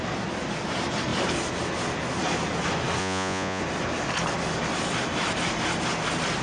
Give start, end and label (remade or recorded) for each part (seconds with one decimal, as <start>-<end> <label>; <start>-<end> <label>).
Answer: 0.0-3.0 recorded; 3.0-3.6 remade; 3.6-6.4 recorded